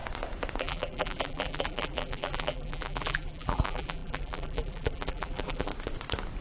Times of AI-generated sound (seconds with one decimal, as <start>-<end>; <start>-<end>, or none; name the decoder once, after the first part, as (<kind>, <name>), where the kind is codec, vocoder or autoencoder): 0.6-5.7 (vocoder, BigVGAN v2)